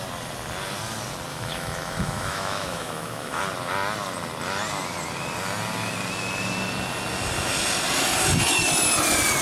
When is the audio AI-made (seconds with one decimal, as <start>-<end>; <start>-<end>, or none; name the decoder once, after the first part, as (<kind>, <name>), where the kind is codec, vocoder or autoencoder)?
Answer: 1.3-3.4 (autoencoder, DAC-VAE)